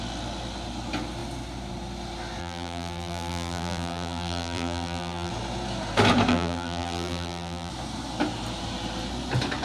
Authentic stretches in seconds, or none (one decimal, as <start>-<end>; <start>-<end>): 0.0-2.4; 5.3-6.3; 7.7-9.6